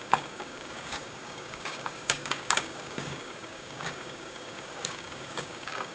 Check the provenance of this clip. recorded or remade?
remade